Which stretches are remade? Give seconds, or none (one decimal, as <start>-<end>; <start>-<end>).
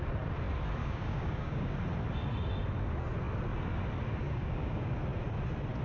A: 0.8-1.7; 4.2-5.0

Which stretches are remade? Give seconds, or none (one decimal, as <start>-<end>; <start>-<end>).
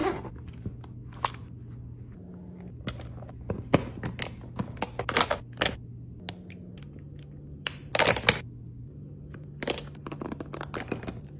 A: none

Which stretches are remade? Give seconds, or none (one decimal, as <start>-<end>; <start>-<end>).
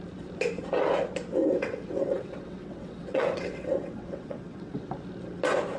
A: 1.4-4.9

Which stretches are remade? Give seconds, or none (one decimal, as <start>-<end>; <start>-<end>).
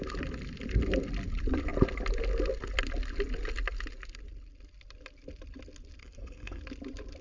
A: 6.0-6.6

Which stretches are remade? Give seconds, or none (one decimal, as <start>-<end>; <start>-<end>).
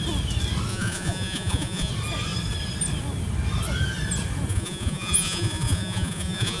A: 0.7-1.9; 4.5-6.6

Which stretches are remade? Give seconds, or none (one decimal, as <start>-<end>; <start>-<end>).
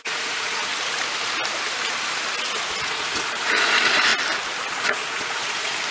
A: 0.0-0.7; 2.8-4.1; 4.8-5.9